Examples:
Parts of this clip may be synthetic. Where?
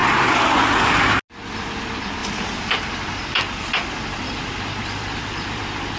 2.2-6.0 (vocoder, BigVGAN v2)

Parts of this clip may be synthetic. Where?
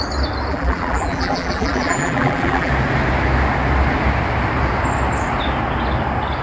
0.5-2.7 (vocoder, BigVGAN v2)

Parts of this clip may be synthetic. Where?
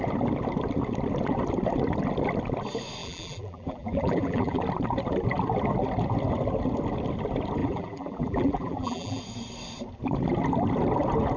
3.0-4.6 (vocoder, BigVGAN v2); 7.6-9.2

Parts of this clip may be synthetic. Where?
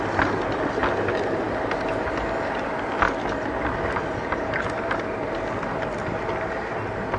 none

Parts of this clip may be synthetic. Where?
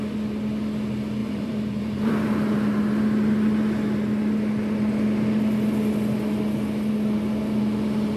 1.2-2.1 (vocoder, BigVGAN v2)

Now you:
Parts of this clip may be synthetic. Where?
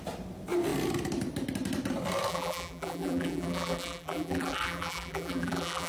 2.3-5.9 (vocoder, BigVGAN v2)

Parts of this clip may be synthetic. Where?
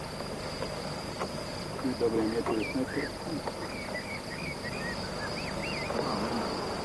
none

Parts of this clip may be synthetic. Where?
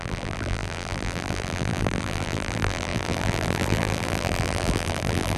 0.0-5.4 (vocoder, BigVGAN v2)